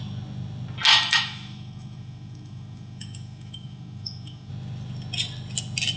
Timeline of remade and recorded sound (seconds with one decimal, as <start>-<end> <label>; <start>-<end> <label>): 0.0-0.9 recorded; 0.9-4.5 remade; 4.5-6.0 recorded